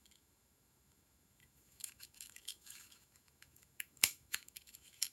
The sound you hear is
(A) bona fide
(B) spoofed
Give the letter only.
B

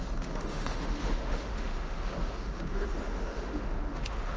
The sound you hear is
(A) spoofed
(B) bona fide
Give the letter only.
A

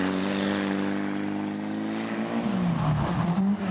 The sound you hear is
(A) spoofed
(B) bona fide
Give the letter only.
B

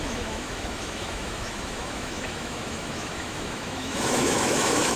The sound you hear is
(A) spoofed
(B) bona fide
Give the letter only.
A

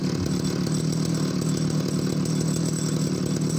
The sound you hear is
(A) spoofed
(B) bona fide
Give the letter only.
B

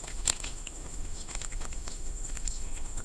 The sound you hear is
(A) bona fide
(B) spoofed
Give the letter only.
B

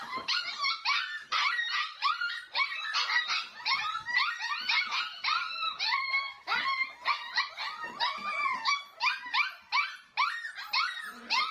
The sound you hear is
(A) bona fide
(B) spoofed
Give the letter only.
A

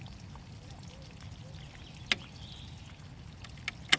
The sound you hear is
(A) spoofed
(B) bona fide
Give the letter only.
B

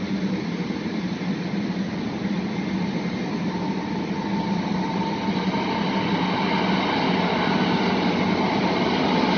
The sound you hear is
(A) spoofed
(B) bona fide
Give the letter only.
B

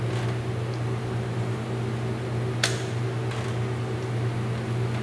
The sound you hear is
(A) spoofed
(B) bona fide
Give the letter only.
B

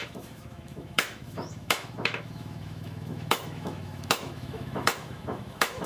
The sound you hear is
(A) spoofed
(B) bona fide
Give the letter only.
A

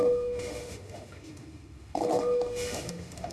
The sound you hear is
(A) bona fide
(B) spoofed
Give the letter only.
B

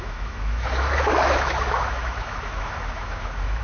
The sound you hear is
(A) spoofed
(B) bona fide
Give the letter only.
A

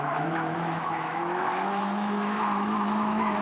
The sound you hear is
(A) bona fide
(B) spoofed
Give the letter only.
B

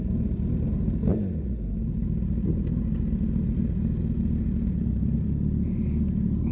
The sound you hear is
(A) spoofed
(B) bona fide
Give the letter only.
B